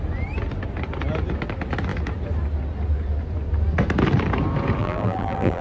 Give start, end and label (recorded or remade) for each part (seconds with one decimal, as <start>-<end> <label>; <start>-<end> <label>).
0.0-4.8 recorded; 4.8-5.6 remade